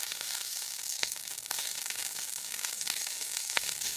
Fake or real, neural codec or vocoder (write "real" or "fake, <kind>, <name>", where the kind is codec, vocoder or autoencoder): fake, codec, DAC